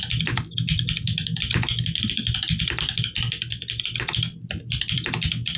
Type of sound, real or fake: fake